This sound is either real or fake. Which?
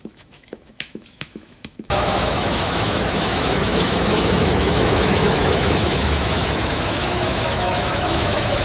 fake